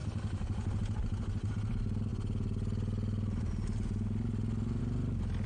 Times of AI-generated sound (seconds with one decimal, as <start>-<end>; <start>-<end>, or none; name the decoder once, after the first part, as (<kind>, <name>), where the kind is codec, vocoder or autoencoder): none